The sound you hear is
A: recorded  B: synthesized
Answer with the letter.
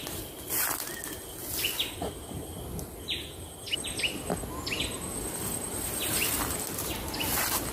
A